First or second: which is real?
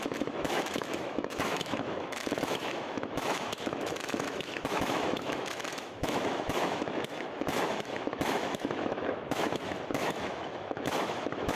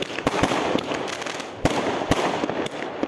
second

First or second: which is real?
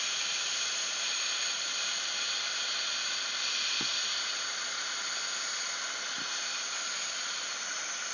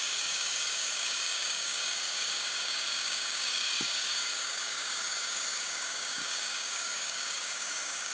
first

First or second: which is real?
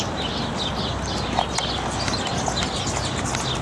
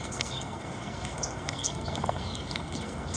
first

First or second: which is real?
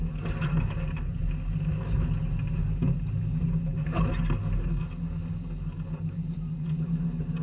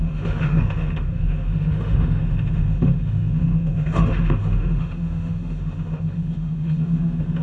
first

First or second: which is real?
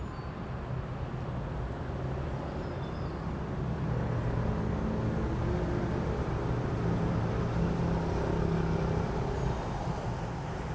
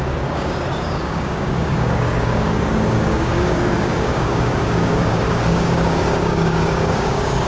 first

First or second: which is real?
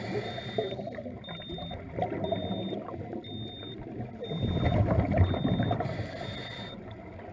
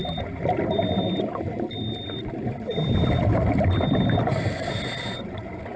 first